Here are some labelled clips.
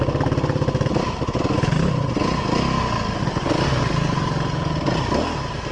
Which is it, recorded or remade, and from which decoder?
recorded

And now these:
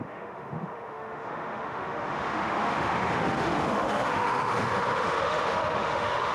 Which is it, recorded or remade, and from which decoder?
remade, autoencoder, DAC-VAE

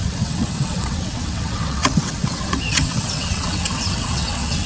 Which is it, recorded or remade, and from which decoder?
remade, vocoder, WaveNeXt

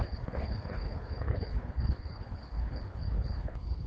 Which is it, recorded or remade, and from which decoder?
remade, codec, HILCodec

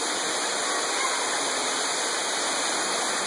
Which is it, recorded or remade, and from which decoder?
recorded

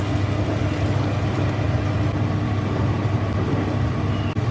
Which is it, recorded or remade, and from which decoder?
recorded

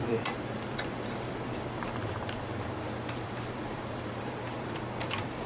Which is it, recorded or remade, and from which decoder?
remade, vocoder, BigVGAN v2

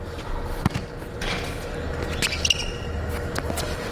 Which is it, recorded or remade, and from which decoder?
recorded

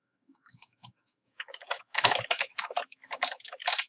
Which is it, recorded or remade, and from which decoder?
remade, autoencoder, DAC-VAE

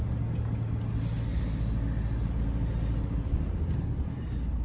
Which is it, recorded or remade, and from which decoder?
recorded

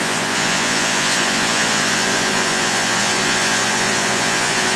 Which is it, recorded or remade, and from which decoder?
remade, vocoder, Vocos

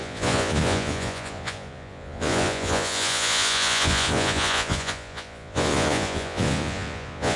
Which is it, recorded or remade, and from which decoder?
remade, vocoder, Vocos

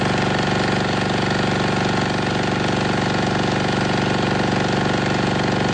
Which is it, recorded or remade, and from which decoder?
recorded